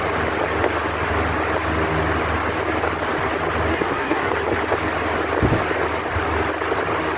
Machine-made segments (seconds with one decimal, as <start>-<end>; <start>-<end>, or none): 3.7-4.3